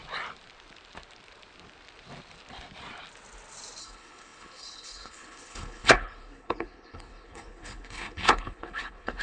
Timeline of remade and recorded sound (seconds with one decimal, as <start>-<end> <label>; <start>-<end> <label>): 0.0-3.8 recorded; 3.8-9.2 remade